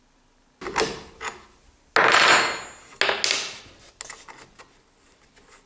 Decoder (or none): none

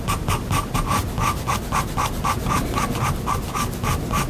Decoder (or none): none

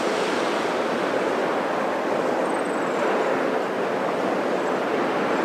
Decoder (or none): none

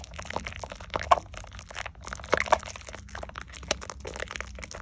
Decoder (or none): none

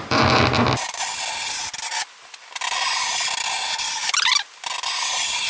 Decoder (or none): none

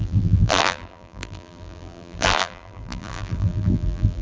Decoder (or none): vocoder, BigVGAN v2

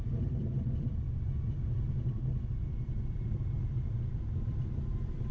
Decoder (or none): vocoder, BigVGAN v2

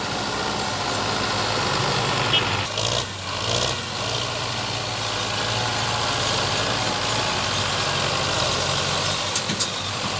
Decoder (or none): none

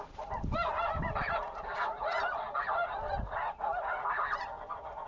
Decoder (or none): vocoder, BigVGAN v2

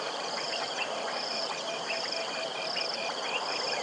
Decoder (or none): vocoder, BigVGAN v2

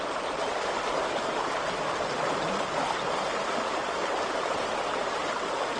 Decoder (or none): none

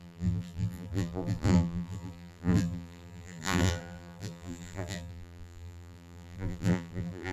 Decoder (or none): vocoder, BigVGAN v2